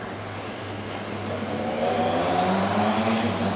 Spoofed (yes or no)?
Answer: no